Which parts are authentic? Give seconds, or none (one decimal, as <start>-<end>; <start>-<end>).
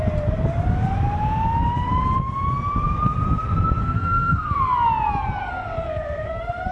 0.0-3.8; 4.6-5.4